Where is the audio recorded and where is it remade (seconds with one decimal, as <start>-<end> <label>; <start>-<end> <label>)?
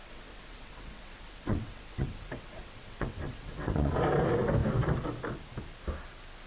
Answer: 0.0-3.9 remade; 3.9-6.5 recorded